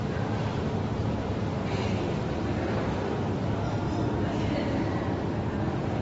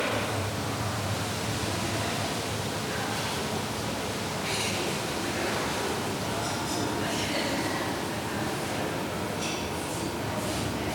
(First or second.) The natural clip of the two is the second